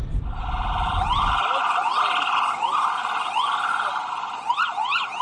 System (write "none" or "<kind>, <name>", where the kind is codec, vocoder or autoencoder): none